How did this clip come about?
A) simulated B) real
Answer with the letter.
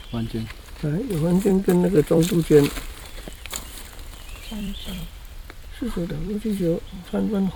A